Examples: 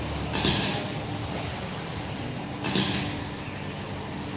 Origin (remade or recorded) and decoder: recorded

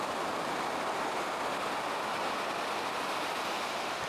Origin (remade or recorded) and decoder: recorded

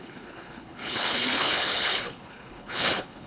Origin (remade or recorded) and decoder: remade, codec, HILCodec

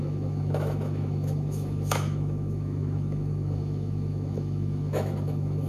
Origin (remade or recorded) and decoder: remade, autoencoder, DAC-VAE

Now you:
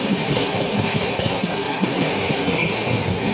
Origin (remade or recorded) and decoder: remade, codec, SNAC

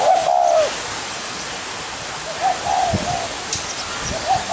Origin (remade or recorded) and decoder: recorded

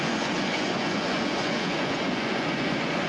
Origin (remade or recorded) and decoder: remade, vocoder, Vocos